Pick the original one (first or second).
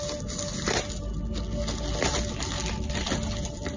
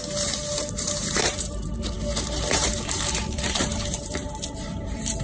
first